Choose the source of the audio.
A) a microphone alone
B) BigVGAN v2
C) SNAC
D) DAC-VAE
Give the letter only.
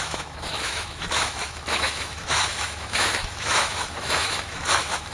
D